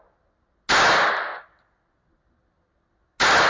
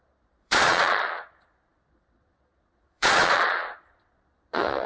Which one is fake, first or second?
second